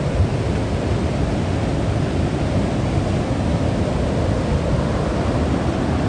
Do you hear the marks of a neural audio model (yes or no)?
no